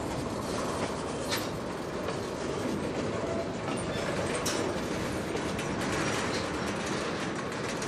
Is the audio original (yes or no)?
yes